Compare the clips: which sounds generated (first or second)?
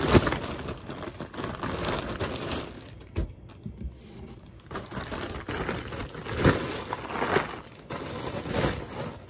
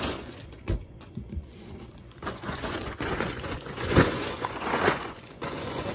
second